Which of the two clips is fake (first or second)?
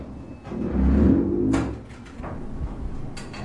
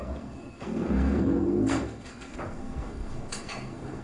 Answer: second